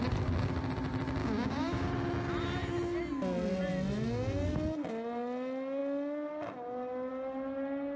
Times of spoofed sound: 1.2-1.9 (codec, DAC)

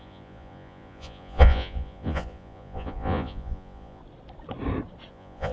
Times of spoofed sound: 0.0-4.0 (vocoder, Vocos); 5.1-5.5

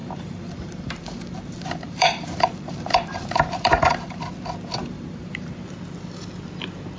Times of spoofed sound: 0.0-4.2 (vocoder, BigVGAN v2); 4.8-5.7